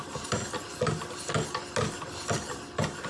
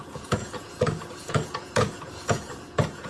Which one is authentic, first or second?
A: first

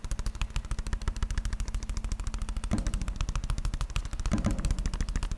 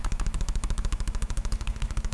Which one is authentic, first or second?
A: first